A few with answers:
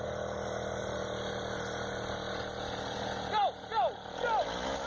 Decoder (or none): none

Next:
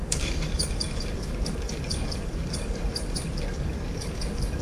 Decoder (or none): codec, DAC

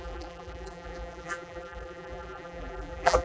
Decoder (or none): vocoder, BigVGAN v2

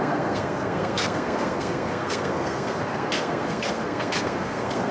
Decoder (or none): codec, SNAC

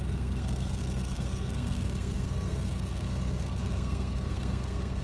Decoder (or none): codec, SNAC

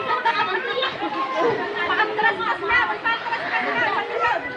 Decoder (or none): none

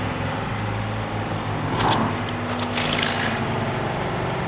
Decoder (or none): none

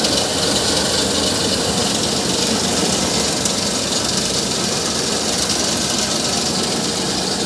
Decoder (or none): none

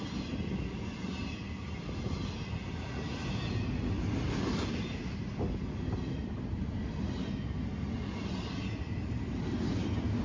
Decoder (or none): none